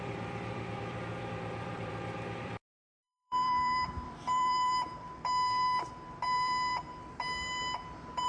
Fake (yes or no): yes